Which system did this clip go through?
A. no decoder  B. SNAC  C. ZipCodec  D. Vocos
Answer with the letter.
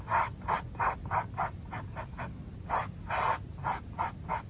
A